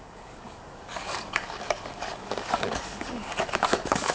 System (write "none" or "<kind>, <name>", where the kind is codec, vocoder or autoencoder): codec, DAC